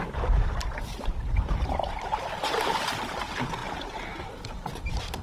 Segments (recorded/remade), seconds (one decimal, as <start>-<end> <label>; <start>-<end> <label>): 0.0-3.6 remade; 3.6-4.2 recorded; 4.2-5.2 remade